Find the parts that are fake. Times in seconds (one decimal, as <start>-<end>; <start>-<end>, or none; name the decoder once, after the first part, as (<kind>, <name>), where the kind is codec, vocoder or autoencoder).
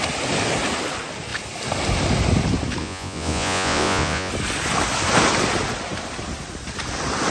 2.8-4.3 (vocoder, Vocos)